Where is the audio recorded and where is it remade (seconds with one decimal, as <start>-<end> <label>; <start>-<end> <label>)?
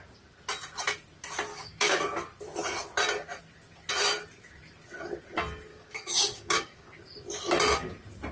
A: 0.0-1.5 recorded; 1.5-2.0 remade; 2.0-5.7 recorded; 5.7-7.0 remade; 7.0-8.3 recorded